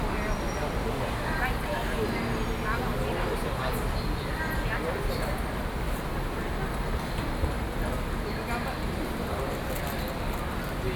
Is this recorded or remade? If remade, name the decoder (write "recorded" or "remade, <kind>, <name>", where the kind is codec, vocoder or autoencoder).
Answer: recorded